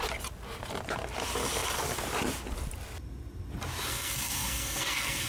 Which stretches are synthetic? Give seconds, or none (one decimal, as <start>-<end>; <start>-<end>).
3.9-5.3